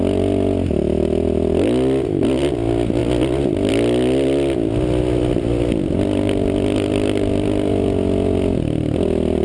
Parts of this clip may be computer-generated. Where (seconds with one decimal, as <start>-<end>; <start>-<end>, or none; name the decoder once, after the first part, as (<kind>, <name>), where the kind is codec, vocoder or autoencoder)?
none